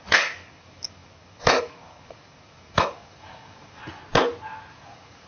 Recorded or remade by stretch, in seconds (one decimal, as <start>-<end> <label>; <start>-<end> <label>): 0.0-3.8 remade; 3.8-4.7 recorded; 4.7-5.3 remade